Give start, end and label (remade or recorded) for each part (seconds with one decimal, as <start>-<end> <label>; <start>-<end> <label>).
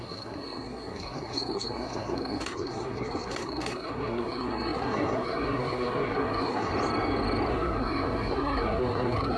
0.0-6.7 remade; 6.7-7.5 recorded; 7.5-9.4 remade